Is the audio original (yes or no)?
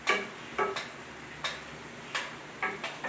yes